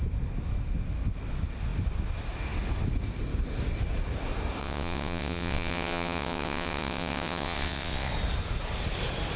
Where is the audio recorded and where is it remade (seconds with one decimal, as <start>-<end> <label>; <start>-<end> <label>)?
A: 0.0-4.6 recorded; 4.6-8.1 remade; 8.1-9.4 recorded